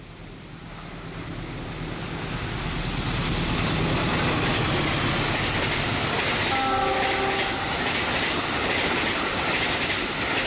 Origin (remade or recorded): recorded